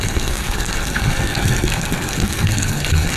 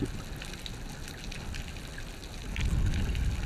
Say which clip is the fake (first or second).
first